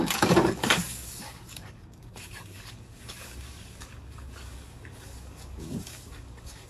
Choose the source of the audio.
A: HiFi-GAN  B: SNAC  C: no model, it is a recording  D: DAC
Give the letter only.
D